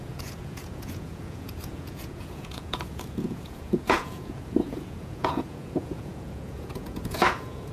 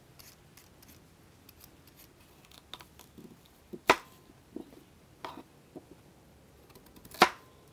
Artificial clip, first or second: first